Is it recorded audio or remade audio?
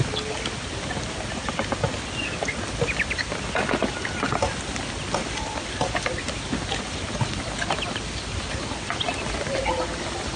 recorded